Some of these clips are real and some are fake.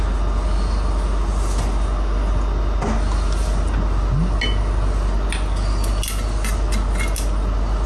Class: real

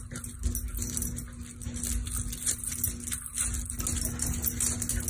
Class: real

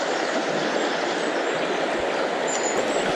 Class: real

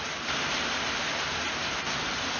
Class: real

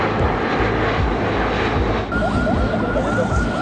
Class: real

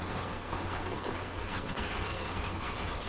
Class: fake